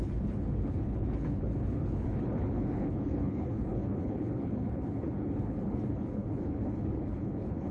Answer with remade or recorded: remade